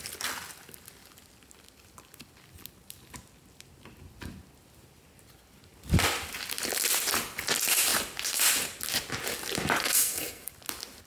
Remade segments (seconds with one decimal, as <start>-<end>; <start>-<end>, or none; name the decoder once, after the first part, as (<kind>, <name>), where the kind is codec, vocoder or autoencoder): 9.8-10.5 (codec, SNAC)